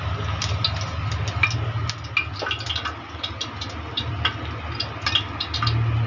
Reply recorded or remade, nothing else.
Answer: recorded